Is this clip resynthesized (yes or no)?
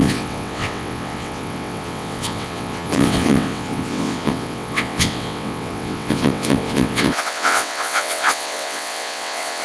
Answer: yes